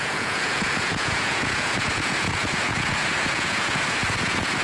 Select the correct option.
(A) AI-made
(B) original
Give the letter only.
A